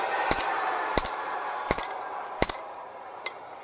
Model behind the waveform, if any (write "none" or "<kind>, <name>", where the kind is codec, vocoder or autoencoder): vocoder, BigVGAN v2